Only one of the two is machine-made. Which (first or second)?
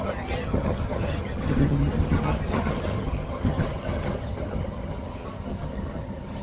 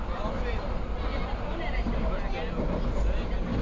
first